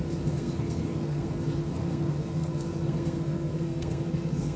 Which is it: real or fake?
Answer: fake